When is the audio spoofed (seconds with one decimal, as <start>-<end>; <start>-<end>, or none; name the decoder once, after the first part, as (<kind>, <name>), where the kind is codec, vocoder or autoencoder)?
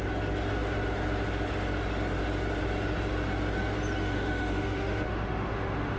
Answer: 4.0-6.0 (autoencoder, DAC-VAE)